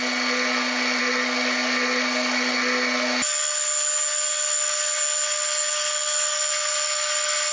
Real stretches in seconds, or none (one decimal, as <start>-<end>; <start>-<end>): 0.0-7.5